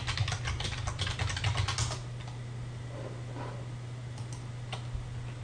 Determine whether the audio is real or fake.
real